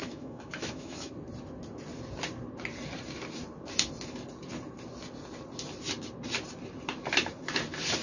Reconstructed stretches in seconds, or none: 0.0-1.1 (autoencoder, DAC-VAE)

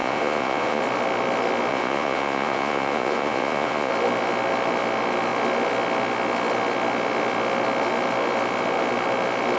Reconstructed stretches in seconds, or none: 0.0-0.8 (vocoder, Vocos); 1.7-3.9

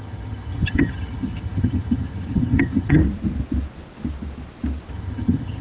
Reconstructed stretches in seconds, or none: 0.0-3.0 (vocoder, HiFi-GAN); 4.9-5.6

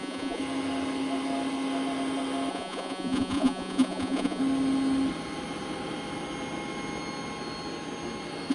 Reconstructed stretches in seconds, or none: 0.0-0.4 (vocoder, Vocos); 2.5-4.4

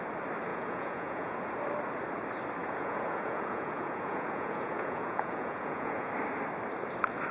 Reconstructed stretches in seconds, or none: 0.5-1.4 (vocoder, Vocos); 2.6-6.1

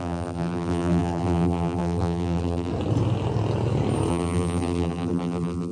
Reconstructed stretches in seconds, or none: 0.0-2.7 (vocoder, BigVGAN v2); 4.1-5.7

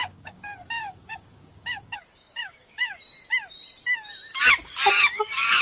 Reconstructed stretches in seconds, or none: 0.0-2.9 (codec, DAC); 4.3-5.6